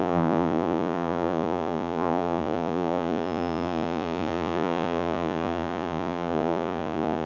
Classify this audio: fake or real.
fake